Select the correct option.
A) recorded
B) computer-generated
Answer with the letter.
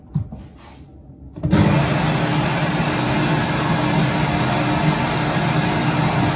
A